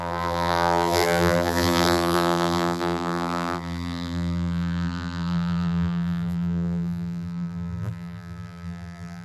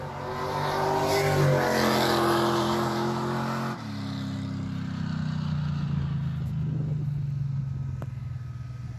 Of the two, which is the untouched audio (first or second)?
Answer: second